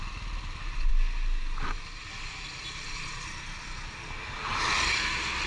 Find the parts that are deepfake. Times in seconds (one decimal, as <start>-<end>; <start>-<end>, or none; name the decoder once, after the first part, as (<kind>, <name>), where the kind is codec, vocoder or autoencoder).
none